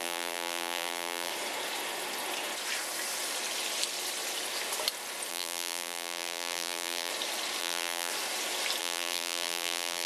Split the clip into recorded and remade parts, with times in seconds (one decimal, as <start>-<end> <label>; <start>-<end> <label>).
0.0-1.3 remade; 1.3-5.3 recorded; 5.3-7.1 remade; 7.1-7.6 recorded; 7.6-8.1 remade; 8.1-8.8 recorded; 8.8-10.1 remade